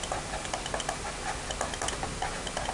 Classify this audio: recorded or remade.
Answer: recorded